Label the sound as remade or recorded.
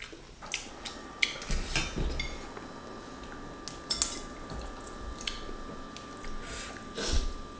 recorded